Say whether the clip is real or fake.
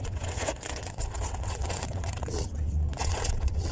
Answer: fake